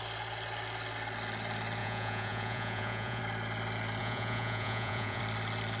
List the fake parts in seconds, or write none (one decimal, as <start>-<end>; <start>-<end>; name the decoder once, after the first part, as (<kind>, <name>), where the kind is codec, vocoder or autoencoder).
1.8-3.2 (vocoder, Vocos); 4.0-5.2